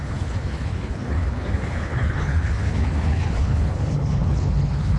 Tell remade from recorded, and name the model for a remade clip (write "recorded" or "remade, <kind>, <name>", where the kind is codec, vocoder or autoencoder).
remade, codec, HILCodec